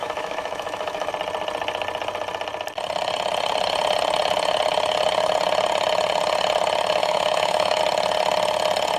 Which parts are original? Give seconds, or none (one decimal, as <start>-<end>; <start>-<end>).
1.1-7.0; 7.8-9.0